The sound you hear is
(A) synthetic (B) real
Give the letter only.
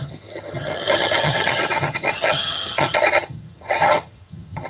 A